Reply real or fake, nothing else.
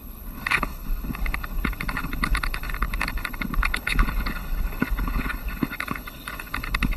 fake